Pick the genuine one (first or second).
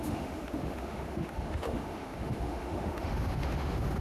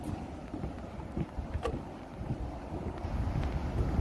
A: second